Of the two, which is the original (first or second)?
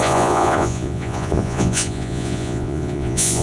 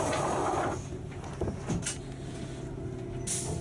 second